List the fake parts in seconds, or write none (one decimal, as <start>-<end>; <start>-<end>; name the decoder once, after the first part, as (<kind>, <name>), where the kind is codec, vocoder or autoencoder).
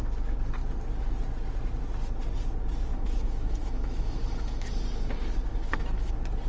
2.9-4.7 (autoencoder, DAC-VAE); 5.5-6.1